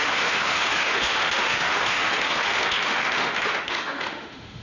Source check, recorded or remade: remade